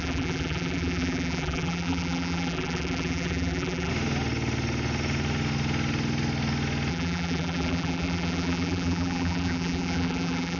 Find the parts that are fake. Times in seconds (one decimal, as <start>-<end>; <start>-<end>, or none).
0.0-3.9; 6.9-10.6

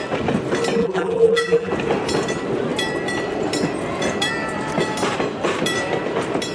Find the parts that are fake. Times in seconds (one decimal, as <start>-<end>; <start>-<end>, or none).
0.8-1.7